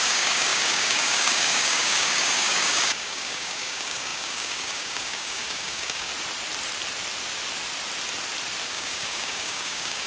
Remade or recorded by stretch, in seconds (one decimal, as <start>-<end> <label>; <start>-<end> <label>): 0.0-6.1 remade; 6.1-8.7 recorded; 8.7-10.1 remade